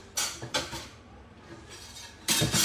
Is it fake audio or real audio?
fake